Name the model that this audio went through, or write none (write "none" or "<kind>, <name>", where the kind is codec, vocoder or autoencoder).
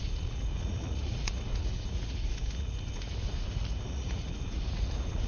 vocoder, Vocos